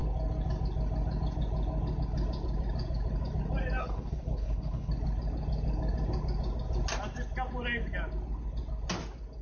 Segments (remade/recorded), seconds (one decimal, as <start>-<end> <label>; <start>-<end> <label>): 0.0-3.8 recorded; 3.8-4.9 remade; 4.9-9.4 recorded